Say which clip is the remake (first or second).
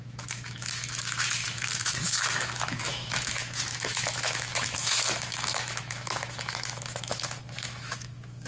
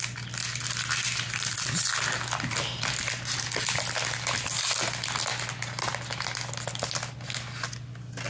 first